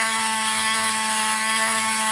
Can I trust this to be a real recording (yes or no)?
no